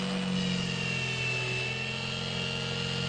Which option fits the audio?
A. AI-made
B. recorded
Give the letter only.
B